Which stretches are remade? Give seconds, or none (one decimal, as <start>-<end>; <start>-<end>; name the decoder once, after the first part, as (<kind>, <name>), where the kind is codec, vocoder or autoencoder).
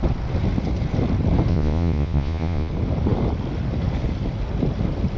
1.5-2.7 (vocoder, Vocos)